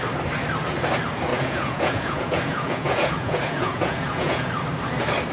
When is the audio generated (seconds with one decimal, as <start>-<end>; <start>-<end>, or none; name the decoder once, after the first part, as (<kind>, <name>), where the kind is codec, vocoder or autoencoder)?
1.3-4.5 (vocoder, Vocos)

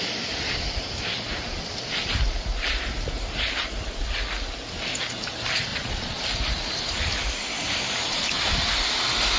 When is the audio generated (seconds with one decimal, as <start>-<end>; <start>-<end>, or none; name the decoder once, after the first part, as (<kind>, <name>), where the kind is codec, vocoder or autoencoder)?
5.7-6.2 (vocoder, Vocos)

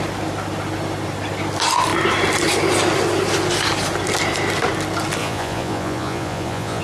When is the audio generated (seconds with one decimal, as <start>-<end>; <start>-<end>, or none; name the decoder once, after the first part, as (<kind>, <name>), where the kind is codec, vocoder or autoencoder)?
5.2-6.8 (vocoder, Vocos)

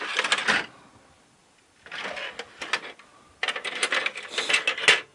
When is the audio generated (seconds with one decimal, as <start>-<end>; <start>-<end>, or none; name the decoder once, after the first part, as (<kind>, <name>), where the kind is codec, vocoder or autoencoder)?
none